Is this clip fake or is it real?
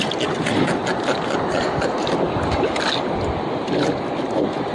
real